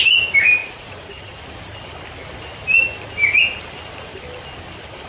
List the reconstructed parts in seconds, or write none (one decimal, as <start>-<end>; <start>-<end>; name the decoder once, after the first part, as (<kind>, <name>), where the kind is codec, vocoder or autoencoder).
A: 0.6-1.4 (vocoder, Vocos)